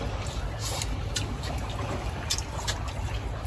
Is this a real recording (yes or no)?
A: yes